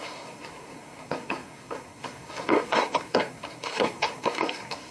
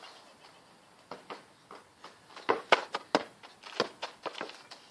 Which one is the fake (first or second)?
first